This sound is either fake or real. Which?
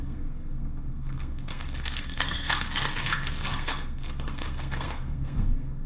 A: fake